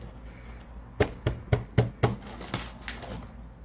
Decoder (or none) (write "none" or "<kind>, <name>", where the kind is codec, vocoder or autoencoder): none